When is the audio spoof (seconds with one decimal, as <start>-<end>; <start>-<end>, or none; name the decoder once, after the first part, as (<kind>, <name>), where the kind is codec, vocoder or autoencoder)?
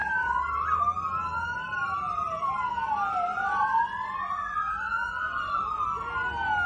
3.3-5.7 (vocoder, Vocos)